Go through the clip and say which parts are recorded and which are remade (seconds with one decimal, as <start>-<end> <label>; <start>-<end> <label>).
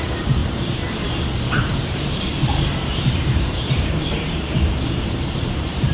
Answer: 0.0-0.4 remade; 0.4-0.9 recorded; 0.9-5.9 remade